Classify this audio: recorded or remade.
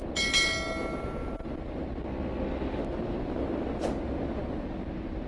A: recorded